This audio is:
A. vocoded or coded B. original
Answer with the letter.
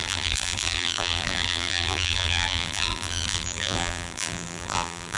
A